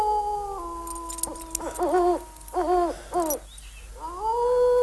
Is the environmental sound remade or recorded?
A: recorded